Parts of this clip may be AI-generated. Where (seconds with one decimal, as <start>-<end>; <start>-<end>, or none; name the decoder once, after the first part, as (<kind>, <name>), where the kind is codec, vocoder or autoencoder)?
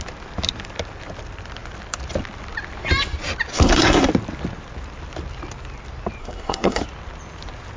3.5-4.1 (codec, SNAC); 6.2-6.8